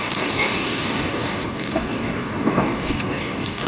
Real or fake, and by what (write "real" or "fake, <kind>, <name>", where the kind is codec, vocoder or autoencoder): fake, codec, DAC